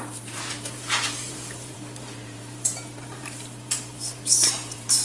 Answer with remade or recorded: remade